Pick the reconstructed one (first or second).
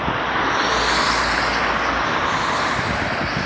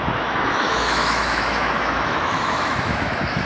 second